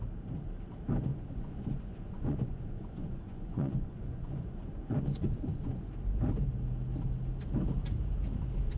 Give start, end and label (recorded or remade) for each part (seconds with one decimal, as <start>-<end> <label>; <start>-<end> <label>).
0.0-1.1 recorded; 1.1-5.9 remade; 5.9-8.8 recorded